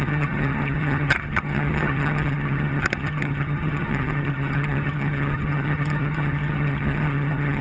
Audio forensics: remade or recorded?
remade